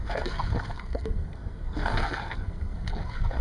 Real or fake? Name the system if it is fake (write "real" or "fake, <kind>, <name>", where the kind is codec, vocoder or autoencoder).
fake, codec, SNAC